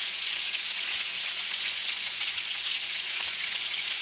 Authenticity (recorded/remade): remade